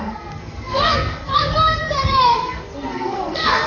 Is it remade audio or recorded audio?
remade